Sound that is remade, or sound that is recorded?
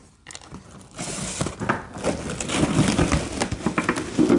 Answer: recorded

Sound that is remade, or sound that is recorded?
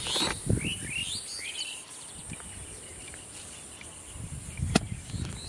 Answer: recorded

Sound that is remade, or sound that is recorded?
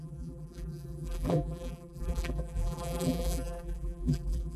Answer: remade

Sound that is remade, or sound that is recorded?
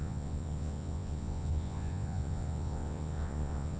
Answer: remade